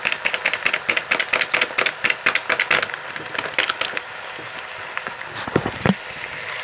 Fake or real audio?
real